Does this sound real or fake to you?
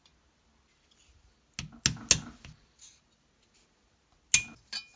real